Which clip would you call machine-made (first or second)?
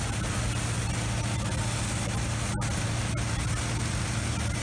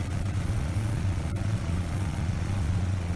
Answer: second